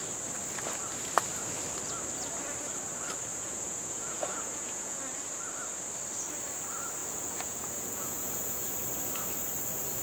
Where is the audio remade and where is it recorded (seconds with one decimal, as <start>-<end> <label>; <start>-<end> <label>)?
0.0-3.3 recorded; 3.3-5.0 remade; 5.0-7.0 recorded; 7.0-8.7 remade; 8.7-10.0 recorded

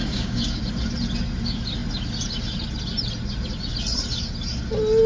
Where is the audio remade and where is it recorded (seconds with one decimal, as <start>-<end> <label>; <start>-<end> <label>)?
0.0-0.6 remade; 0.6-5.1 recorded